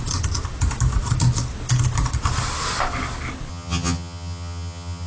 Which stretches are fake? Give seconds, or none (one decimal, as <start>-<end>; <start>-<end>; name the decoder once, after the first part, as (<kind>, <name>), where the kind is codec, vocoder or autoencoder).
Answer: 3.5-5.1 (vocoder, HiFi-GAN)